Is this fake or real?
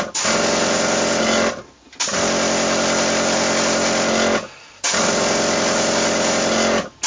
real